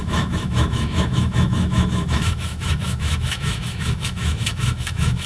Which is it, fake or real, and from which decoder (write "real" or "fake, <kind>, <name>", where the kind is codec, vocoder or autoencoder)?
fake, autoencoder, DAC-VAE